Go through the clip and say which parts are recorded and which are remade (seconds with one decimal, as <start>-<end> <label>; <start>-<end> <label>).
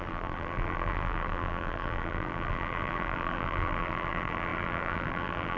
0.0-5.6 remade